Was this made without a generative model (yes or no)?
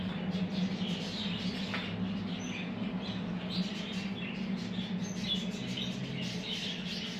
yes